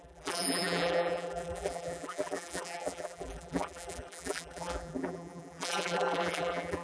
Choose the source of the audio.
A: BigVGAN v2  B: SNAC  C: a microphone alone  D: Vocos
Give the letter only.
A